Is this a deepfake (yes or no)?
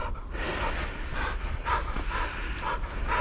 yes